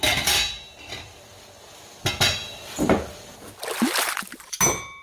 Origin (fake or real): real